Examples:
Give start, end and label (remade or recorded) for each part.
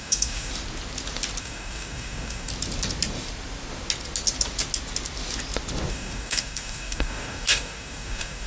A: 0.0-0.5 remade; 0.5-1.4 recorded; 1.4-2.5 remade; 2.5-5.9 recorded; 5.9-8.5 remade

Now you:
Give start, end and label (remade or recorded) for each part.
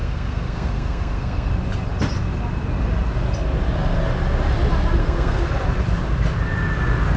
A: 0.0-1.5 remade; 1.5-5.0 recorded; 5.0-5.5 remade; 5.5-7.2 recorded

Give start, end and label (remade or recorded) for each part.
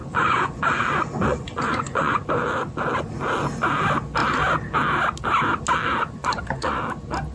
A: 0.0-0.6 remade; 0.6-1.3 recorded; 1.3-2.2 remade; 2.2-6.2 recorded; 6.2-6.8 remade; 6.8-7.3 recorded